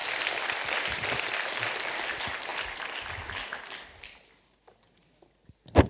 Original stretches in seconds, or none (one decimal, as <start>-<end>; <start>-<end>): 0.0-5.9